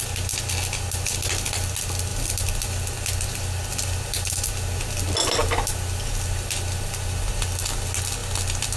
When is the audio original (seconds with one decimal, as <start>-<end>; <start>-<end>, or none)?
0.0-2.1; 4.8-5.4; 7.3-8.8